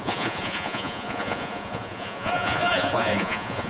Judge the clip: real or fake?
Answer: fake